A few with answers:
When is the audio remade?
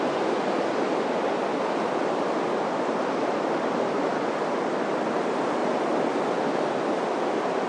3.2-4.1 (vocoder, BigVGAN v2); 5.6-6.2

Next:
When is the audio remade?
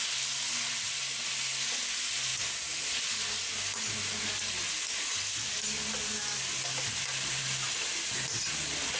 none